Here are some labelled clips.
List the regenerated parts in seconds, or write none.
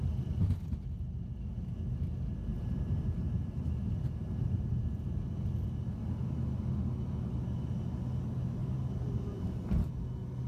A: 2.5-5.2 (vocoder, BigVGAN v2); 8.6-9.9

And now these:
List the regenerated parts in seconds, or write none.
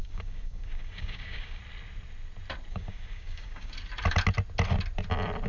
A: 0.0-1.6 (codec, DAC); 2.7-3.7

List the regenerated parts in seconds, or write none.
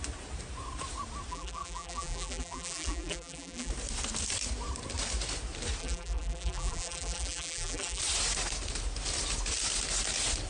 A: 1.3-3.7 (vocoder, BigVGAN v2); 5.8-8.0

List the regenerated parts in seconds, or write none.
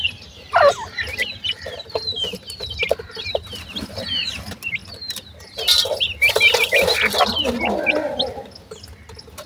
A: none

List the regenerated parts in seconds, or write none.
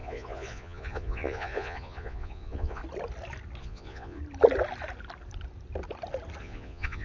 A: 0.0-2.8 (vocoder, Vocos); 3.6-4.2; 6.4-7.0